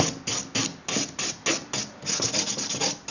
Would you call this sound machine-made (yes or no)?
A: no